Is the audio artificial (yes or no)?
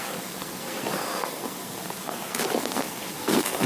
yes